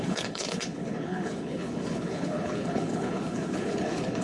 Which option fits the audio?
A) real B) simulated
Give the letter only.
B